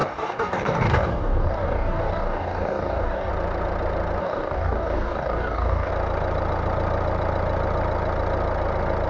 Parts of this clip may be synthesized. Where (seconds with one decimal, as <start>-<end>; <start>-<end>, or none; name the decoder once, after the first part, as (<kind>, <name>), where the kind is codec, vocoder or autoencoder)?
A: 0.0-3.3 (codec, DAC); 4.2-5.9